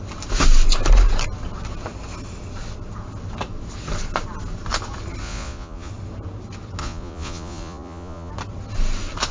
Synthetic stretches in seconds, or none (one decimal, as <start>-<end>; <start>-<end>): 5.2-5.9; 6.8-8.3